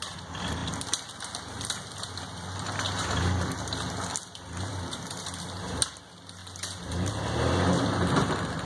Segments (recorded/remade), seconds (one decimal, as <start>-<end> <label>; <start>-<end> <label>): 0.0-8.7 recorded